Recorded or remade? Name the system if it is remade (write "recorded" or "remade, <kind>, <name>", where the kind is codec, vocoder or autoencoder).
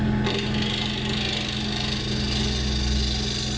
recorded